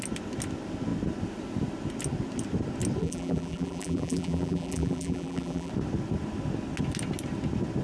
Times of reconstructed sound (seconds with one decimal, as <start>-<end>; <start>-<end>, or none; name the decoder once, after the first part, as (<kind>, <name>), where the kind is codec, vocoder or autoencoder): 3.0-5.7 (vocoder, BigVGAN v2)